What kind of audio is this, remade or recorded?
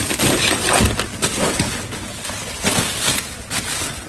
recorded